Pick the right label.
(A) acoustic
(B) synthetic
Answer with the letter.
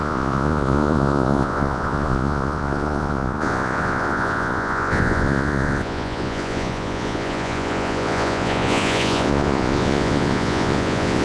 B